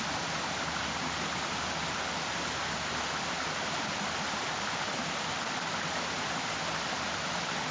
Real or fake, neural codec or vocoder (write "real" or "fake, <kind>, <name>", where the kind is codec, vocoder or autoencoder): real